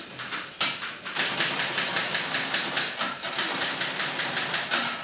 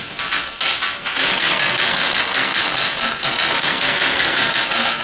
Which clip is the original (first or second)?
first